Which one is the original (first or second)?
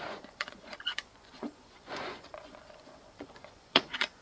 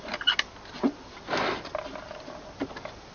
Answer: second